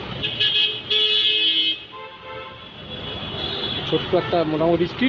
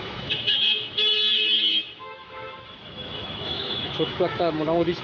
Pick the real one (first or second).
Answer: first